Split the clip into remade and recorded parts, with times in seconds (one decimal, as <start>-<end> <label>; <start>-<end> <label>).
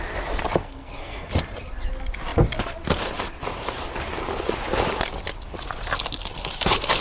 0.0-0.6 recorded; 0.6-1.3 remade; 1.3-7.0 recorded